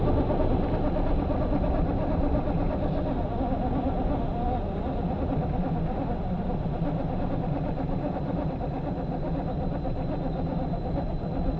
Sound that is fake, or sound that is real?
real